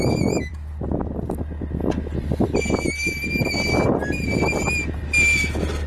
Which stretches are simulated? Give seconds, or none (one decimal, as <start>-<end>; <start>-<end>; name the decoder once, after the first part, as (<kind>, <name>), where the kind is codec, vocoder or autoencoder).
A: none